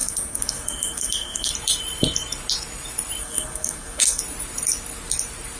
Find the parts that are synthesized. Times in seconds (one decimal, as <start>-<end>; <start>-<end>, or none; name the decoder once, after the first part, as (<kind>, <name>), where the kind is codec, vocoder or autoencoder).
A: 0.0-1.5 (codec, SNAC); 3.2-4.2